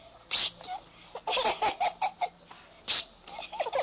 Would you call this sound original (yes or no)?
yes